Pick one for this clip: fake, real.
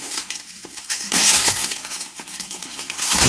fake